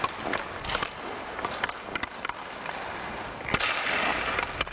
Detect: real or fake real